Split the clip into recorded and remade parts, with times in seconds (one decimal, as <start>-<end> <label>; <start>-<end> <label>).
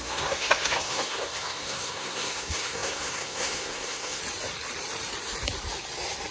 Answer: 0.0-4.2 remade; 4.2-6.3 recorded